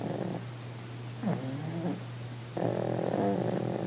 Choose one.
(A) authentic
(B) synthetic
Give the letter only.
A